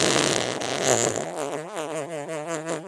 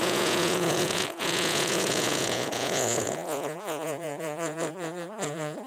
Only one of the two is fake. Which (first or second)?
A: second